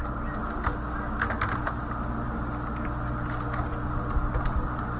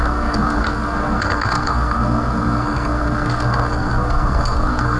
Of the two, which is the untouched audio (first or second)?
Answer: first